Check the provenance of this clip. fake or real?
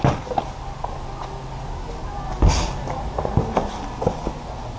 real